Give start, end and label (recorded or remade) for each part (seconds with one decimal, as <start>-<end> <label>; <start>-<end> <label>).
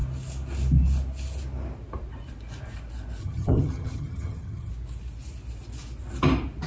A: 0.0-3.2 recorded; 3.2-4.7 remade; 4.7-6.7 recorded